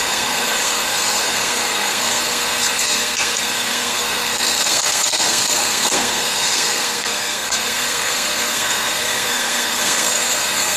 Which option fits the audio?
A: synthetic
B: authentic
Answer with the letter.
A